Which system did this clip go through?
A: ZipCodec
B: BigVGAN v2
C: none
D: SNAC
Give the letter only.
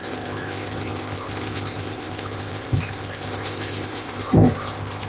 A